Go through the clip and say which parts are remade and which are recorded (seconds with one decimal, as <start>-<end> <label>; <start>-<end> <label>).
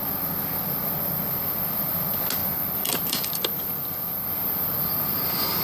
0.0-5.6 recorded